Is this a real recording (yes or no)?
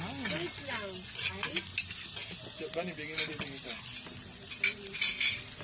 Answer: yes